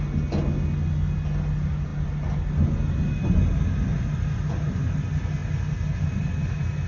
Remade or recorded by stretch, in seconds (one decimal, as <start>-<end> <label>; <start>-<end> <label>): 0.0-6.9 recorded